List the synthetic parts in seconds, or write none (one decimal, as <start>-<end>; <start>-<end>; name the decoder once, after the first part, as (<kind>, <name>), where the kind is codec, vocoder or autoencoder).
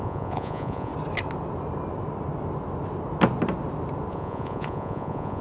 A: 0.0-0.9 (vocoder, Vocos); 4.1-5.4